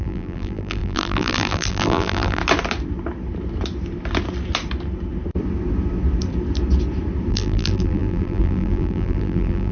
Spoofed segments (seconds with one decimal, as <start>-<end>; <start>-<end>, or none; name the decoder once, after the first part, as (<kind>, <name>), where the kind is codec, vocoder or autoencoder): 0.0-2.4 (vocoder, BigVGAN v2); 7.3-9.7

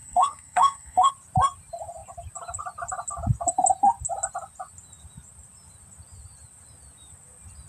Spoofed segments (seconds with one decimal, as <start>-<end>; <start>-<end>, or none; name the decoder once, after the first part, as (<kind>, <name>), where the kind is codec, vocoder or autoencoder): 0.0-1.1 (codec, SNAC)

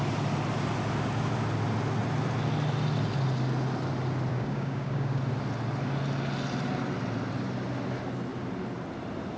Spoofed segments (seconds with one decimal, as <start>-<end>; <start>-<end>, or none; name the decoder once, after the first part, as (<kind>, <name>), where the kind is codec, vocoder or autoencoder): 4.3-5.2 (codec, DAC)

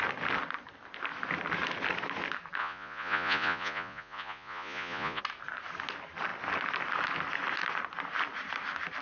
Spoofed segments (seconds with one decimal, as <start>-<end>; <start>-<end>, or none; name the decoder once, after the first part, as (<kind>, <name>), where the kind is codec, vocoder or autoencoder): 2.6-5.2 (vocoder, Vocos)

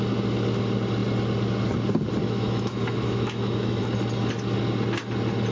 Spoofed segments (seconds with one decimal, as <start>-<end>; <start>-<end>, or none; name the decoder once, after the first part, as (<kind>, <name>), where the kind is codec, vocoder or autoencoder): 2.2-3.8 (autoencoder, DAC-VAE)

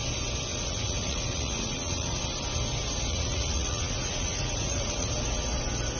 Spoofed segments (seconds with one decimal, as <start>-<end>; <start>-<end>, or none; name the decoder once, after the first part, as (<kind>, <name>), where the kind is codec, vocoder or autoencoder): 0.5-2.2 (vocoder, Vocos); 3.1-5.1

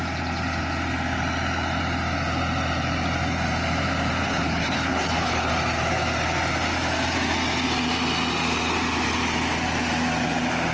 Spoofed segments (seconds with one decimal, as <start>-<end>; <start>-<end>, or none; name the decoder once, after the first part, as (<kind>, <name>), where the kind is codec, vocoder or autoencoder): 4.2-5.5 (codec, HILCodec)